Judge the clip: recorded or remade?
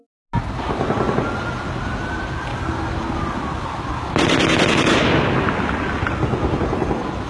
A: recorded